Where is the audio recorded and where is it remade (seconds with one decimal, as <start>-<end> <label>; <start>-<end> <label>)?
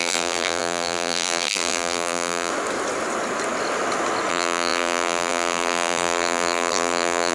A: 0.0-2.5 remade; 2.5-4.3 recorded; 4.3-7.3 remade